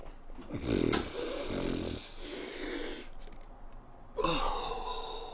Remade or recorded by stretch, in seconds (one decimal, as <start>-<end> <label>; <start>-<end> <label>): 0.0-5.3 recorded